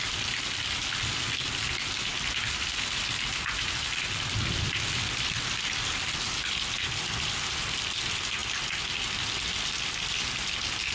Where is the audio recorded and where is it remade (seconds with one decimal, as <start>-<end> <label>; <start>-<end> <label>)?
0.0-10.9 recorded